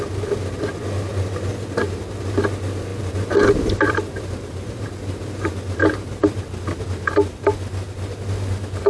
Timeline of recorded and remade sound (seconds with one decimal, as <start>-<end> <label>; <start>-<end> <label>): 0.0-2.9 recorded; 2.9-6.4 remade; 6.4-8.9 recorded